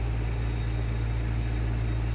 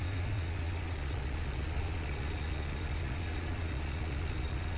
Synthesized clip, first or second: second